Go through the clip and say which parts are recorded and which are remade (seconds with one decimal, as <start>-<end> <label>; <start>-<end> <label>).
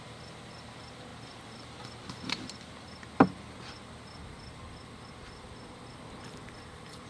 0.0-7.1 recorded